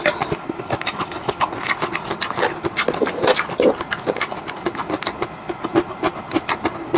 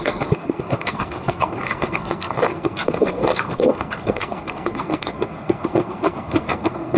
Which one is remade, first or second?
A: second